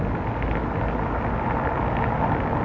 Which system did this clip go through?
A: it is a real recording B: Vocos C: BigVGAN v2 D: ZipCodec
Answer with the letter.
A